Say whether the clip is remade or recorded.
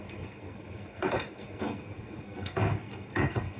remade